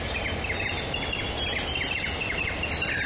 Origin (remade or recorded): recorded